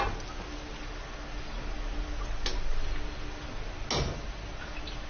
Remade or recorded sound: recorded